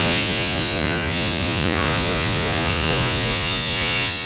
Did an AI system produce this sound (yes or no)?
yes